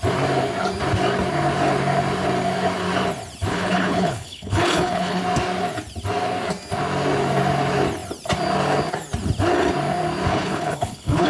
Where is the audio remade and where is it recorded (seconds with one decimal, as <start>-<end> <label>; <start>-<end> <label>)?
0.0-3.5 recorded; 3.5-5.2 remade; 5.2-10.3 recorded; 10.3-11.3 remade